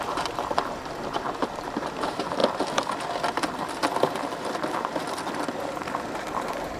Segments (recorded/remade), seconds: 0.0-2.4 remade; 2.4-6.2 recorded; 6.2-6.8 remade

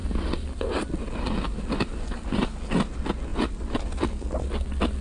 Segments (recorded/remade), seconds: 0.0-5.0 recorded

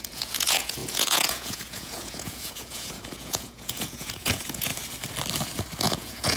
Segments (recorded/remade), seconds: 0.0-4.7 remade; 4.7-5.8 recorded; 5.8-6.4 remade

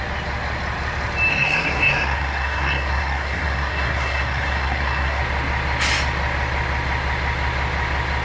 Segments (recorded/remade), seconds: 0.0-1.3 recorded; 1.3-5.2 remade; 5.2-8.2 recorded

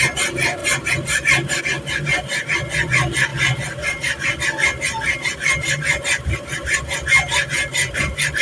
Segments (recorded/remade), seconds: 0.0-8.4 recorded

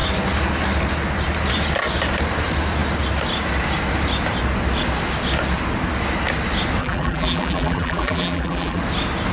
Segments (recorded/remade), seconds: 0.0-6.8 recorded; 6.8-8.8 remade; 8.8-9.3 recorded

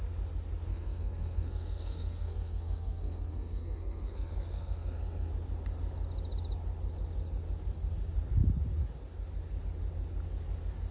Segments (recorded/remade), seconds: 0.0-0.7 recorded; 0.7-5.3 remade; 5.3-10.9 recorded

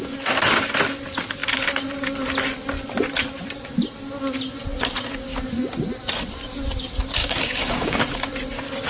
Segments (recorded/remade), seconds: 0.0-7.2 recorded; 7.2-8.0 remade; 8.0-8.9 recorded